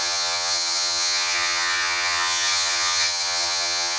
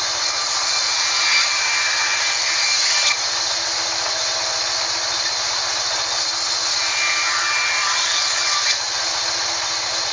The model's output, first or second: first